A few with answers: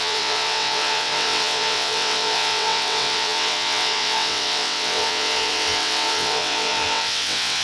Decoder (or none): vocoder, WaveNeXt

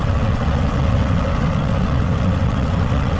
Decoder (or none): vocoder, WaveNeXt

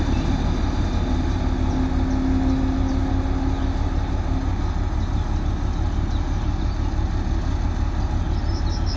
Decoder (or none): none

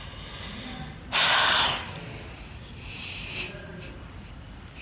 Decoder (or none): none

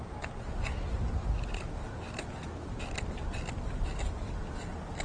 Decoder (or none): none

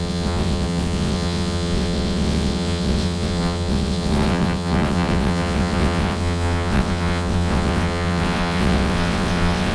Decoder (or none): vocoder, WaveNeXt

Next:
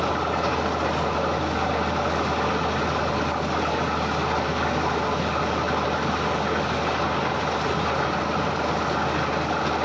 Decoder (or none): none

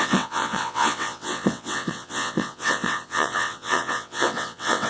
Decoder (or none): vocoder, WaveNeXt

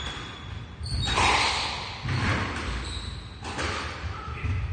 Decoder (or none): none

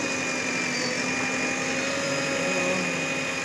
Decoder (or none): none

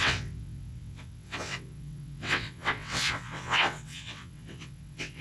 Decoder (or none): vocoder, WaveNeXt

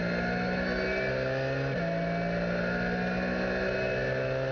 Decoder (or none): none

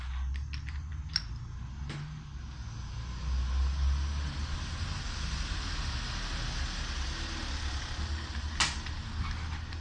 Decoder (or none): none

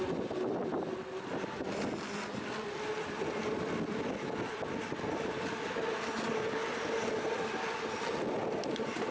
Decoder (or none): none